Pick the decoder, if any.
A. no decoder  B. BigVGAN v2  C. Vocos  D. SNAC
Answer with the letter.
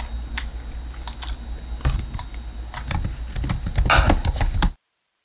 A